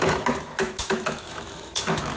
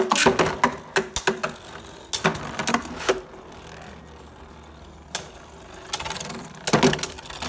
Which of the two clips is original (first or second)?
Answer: second